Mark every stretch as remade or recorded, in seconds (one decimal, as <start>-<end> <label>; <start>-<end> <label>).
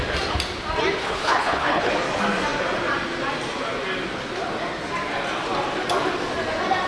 0.0-1.0 recorded; 1.0-1.9 remade; 1.9-6.9 recorded